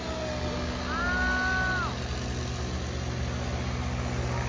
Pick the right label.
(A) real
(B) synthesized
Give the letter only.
A